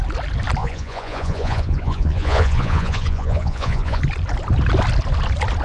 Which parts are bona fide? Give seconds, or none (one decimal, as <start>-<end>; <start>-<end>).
0.0-0.6; 4.0-5.6